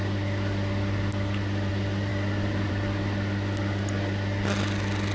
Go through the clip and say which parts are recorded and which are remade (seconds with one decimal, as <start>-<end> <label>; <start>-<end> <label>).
0.0-5.1 recorded

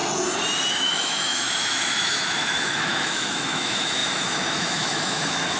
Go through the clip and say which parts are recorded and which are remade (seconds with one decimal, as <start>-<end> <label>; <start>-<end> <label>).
0.0-0.7 recorded; 0.7-5.6 remade

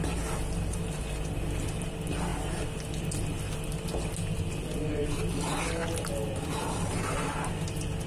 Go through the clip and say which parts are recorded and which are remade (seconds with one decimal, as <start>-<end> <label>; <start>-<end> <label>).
0.0-8.1 recorded

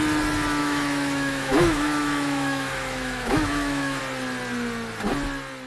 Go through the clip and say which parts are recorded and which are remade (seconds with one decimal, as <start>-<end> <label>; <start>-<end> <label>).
0.0-0.6 recorded; 0.6-4.0 remade; 4.0-5.7 recorded

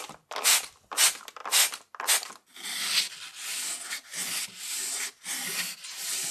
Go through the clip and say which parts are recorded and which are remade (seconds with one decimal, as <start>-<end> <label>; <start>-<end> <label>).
0.0-6.3 recorded